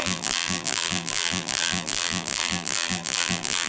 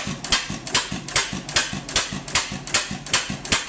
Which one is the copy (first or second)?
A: first